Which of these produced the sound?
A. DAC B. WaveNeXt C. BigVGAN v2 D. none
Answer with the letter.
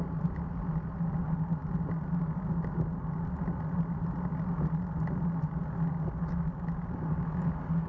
D